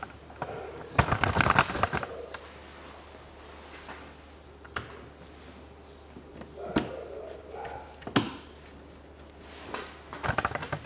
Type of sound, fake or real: real